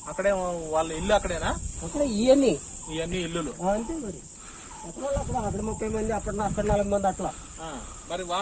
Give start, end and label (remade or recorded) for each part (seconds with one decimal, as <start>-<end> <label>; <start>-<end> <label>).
0.0-8.4 recorded